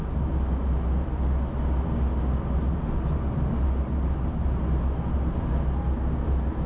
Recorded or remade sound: recorded